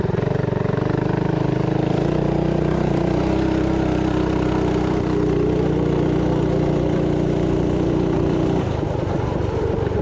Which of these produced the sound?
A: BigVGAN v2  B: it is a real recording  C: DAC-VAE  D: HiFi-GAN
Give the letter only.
A